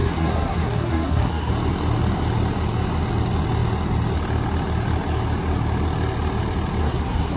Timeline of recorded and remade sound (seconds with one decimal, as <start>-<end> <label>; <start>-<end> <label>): 0.0-1.5 remade; 1.5-6.8 recorded; 6.8-7.4 remade